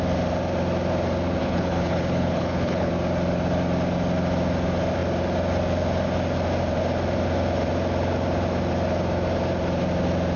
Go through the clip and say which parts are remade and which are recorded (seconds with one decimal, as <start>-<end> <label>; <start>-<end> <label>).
0.0-1.4 recorded; 1.4-2.9 remade; 2.9-10.4 recorded